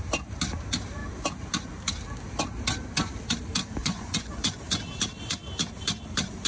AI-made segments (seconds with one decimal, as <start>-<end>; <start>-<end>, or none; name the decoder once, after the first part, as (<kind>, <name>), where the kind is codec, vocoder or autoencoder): 3.8-4.6 (vocoder, Vocos)